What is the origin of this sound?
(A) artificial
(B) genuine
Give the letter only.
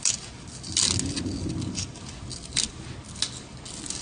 B